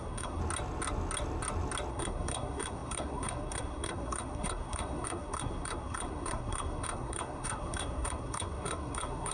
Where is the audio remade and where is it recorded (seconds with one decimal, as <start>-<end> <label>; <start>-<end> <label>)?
0.0-0.4 remade; 0.4-1.9 recorded; 1.9-9.3 remade